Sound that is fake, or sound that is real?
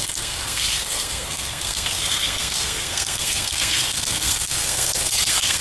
fake